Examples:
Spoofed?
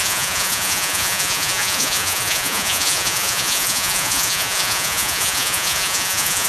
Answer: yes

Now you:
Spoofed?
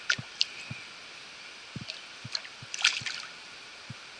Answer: no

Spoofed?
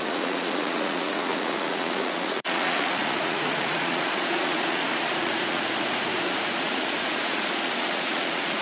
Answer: yes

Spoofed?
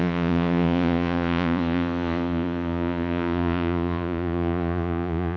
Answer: yes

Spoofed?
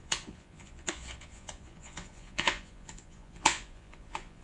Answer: yes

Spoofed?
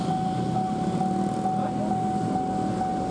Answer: no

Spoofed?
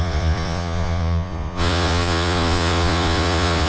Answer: yes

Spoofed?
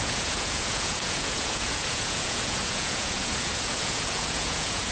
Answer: yes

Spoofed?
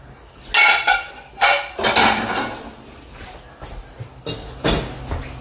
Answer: no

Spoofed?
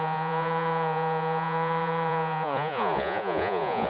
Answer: yes